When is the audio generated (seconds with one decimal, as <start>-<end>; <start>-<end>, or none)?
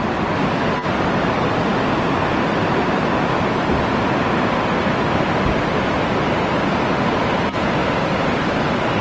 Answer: none